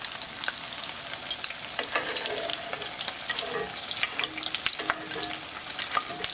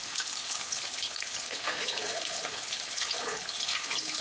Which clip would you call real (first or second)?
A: first